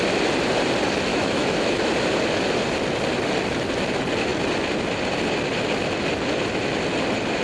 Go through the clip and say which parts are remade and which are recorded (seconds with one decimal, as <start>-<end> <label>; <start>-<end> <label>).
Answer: 0.0-1.1 recorded; 1.1-1.9 remade; 1.9-7.4 recorded